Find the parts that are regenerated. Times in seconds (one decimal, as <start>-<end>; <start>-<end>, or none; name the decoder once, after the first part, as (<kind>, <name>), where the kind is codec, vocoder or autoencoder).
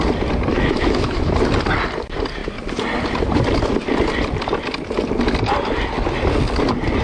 0.5-1.3 (autoencoder, DAC-VAE)